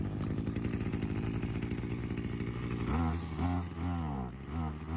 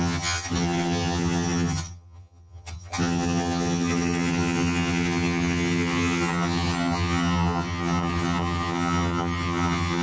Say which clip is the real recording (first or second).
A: first